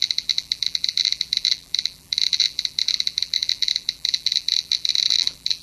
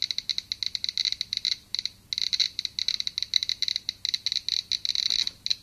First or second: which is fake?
first